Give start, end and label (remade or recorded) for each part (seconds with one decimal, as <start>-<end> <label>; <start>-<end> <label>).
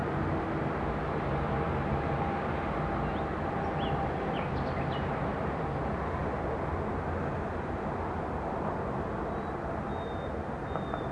0.0-11.1 recorded